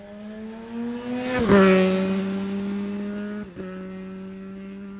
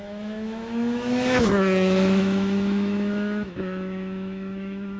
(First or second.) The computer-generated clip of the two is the second